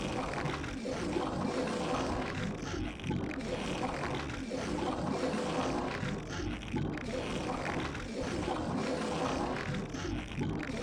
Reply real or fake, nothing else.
real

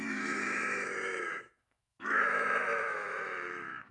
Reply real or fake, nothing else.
fake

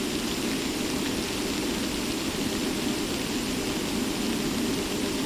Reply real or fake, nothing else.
real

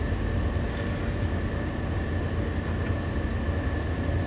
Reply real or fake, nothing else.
real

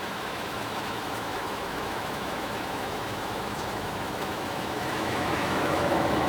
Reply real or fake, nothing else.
fake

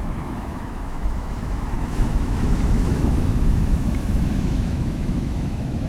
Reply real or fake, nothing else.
fake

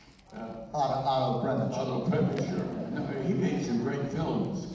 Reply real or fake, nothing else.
real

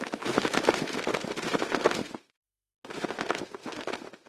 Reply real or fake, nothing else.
fake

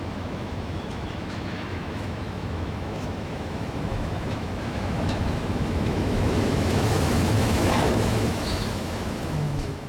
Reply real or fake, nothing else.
fake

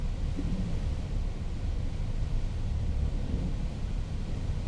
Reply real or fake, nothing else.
real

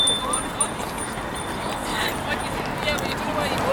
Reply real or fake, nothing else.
real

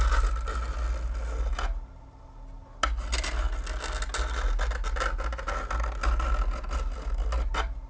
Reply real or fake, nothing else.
real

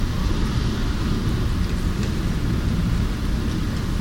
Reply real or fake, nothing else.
real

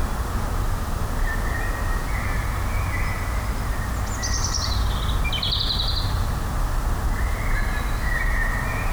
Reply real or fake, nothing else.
real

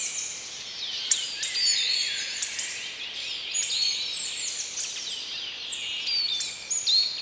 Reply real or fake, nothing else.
real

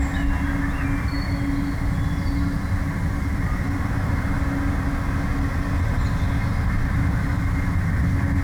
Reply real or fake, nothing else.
real